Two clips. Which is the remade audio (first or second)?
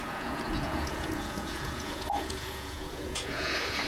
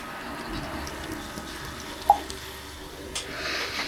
first